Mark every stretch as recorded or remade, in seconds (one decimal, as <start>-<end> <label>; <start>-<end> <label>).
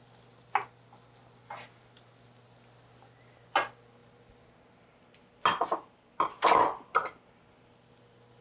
0.0-8.4 recorded